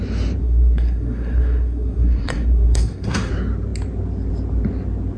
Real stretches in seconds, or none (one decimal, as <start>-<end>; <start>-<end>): 0.0-0.4; 3.3-5.2